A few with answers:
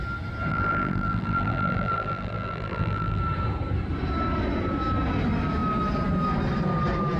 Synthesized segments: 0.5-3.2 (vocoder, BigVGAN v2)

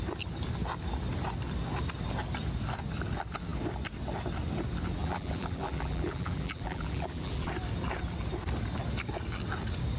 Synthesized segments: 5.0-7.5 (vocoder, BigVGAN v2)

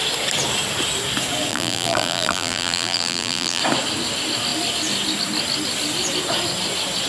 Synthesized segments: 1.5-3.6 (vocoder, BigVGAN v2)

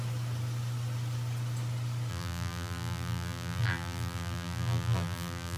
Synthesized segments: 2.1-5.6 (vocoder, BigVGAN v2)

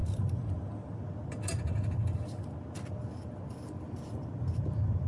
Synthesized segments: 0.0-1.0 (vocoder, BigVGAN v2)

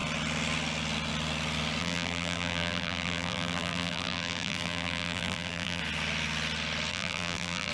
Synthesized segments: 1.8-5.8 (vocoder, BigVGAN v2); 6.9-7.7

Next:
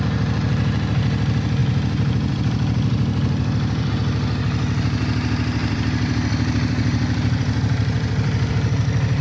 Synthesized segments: 1.6-3.9 (vocoder, BigVGAN v2); 5.6-8.5